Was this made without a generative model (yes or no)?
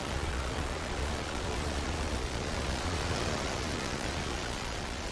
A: no